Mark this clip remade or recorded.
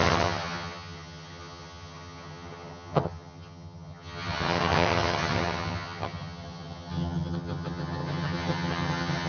remade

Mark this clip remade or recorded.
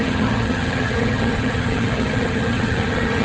remade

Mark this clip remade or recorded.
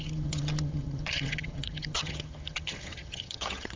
remade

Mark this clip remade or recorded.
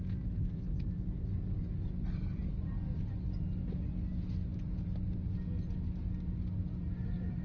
recorded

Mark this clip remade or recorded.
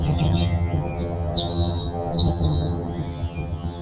remade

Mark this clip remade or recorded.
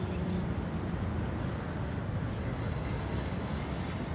recorded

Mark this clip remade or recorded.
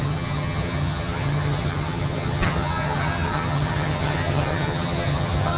remade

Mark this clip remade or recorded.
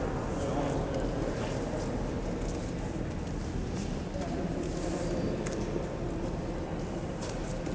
recorded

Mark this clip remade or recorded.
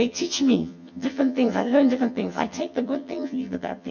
remade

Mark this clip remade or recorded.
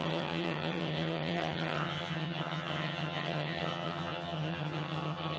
remade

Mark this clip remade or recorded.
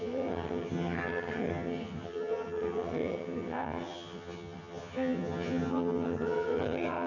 remade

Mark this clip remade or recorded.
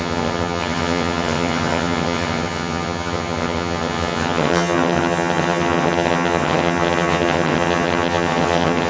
remade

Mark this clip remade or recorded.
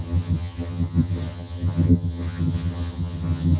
remade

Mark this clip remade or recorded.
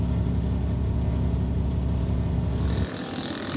recorded